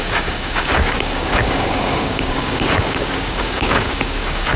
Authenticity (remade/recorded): remade